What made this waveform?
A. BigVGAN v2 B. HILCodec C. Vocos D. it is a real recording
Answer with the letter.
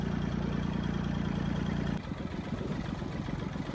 A